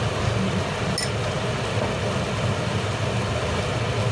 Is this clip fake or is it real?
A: real